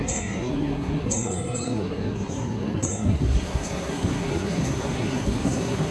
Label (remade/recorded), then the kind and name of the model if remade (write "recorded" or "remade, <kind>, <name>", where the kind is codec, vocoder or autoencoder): remade, codec, SNAC